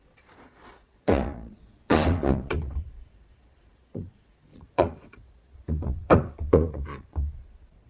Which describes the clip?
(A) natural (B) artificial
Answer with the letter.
B